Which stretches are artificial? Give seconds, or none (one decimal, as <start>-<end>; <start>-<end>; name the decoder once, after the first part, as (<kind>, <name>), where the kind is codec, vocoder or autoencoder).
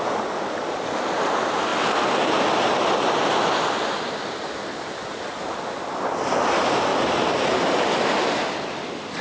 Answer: none